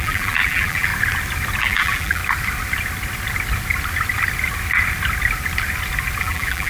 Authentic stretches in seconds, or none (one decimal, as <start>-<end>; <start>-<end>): 0.9-1.6; 2.2-6.2

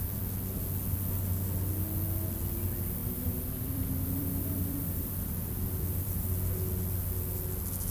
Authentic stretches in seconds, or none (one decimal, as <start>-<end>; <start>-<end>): 0.0-3.0; 6.3-7.9

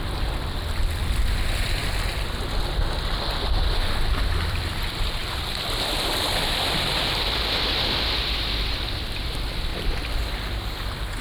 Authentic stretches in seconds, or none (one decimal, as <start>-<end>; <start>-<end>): 1.8-3.6; 9.7-11.2

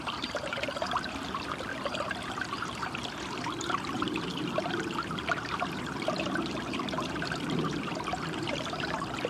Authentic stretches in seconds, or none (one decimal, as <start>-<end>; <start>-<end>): 1.7-5.0